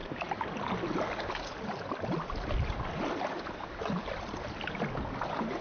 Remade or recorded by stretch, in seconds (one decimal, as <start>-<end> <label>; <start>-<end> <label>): 0.0-5.6 recorded